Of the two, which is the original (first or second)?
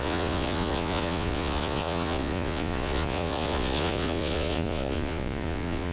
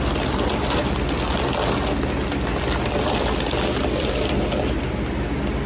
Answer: second